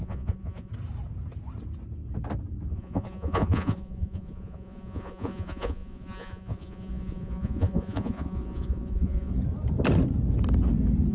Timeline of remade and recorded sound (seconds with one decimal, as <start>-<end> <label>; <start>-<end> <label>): 0.0-0.7 remade; 0.7-2.7 recorded; 2.7-9.3 remade; 9.3-11.1 recorded